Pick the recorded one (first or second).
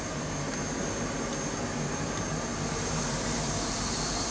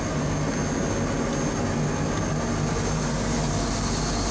second